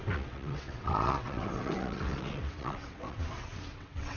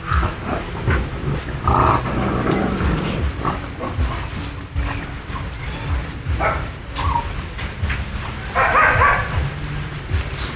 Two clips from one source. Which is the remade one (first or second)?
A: first